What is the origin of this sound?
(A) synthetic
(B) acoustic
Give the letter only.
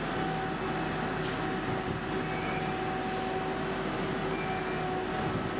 B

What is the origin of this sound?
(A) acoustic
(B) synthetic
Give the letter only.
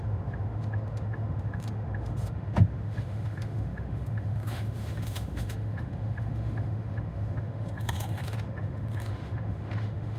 B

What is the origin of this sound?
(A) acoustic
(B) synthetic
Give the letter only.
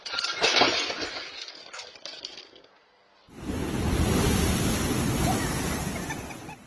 A